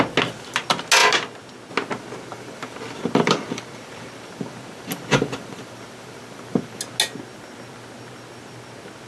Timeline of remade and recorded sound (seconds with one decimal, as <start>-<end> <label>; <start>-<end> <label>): 0.0-2.3 recorded; 2.3-6.8 remade; 6.8-9.1 recorded